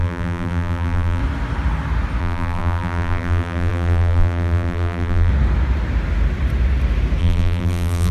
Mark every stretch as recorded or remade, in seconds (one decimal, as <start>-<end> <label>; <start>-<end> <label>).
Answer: 0.0-1.2 remade; 1.2-2.2 recorded; 2.2-5.3 remade; 5.3-7.2 recorded; 7.2-8.1 remade